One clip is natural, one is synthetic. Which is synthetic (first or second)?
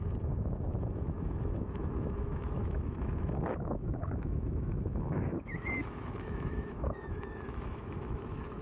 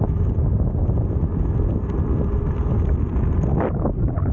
first